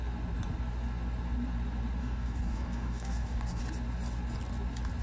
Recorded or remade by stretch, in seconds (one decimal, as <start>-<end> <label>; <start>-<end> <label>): 0.0-2.0 recorded; 2.0-3.6 remade; 3.6-5.0 recorded